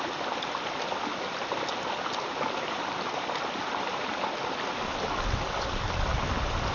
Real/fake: real